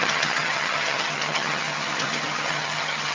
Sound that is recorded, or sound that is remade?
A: remade